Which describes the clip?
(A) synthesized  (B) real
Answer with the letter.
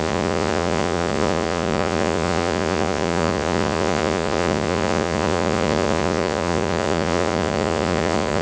A